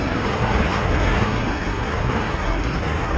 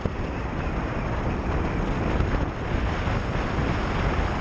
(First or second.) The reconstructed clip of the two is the first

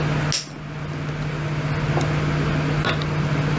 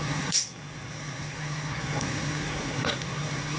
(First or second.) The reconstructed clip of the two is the second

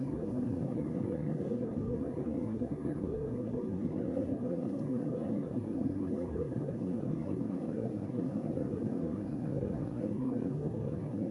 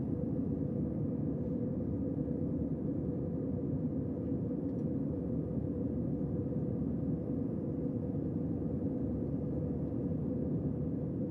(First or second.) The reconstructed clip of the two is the first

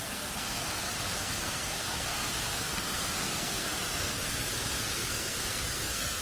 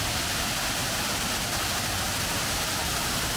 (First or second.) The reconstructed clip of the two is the first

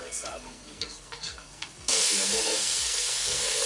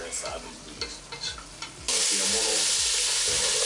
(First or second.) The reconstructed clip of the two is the first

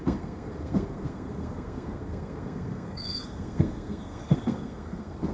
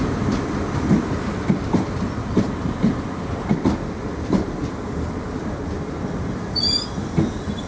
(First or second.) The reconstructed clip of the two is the first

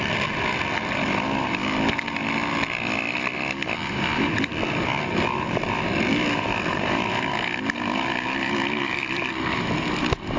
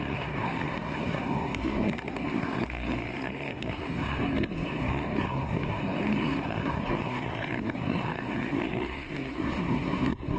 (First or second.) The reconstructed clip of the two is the second